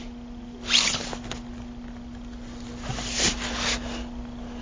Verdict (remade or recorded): recorded